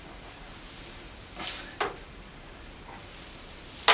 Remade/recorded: recorded